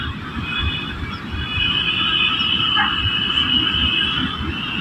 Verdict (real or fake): real